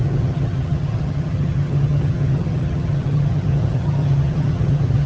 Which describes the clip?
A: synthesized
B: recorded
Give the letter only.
A